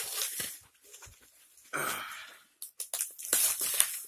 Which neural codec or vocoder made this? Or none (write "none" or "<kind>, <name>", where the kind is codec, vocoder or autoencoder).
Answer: none